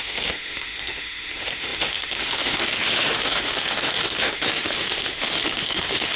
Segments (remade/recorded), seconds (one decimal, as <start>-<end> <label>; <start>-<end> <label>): 0.0-6.2 remade